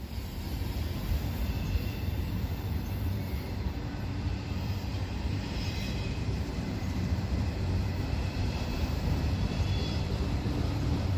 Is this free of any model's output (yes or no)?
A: no